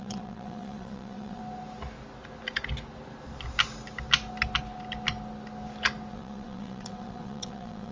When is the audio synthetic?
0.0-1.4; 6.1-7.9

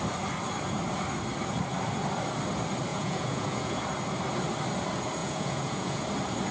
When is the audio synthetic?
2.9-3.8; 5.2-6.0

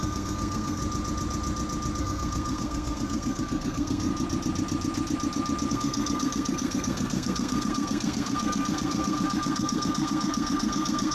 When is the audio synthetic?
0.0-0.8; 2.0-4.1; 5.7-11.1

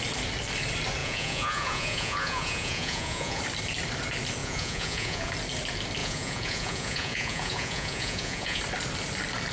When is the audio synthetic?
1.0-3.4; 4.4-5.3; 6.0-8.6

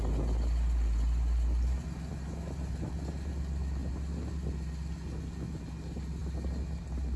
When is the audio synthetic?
none